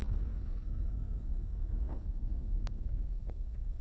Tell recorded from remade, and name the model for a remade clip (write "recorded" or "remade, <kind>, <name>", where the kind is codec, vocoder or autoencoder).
remade, codec, SNAC